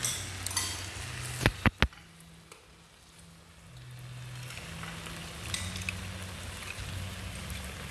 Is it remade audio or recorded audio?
recorded